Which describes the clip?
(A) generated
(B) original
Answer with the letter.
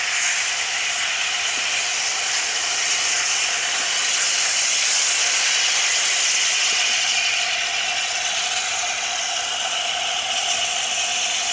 B